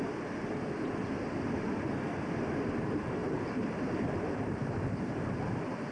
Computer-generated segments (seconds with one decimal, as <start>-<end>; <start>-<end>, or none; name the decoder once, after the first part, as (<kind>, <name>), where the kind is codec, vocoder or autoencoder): 3.2-5.5 (vocoder, BigVGAN v2)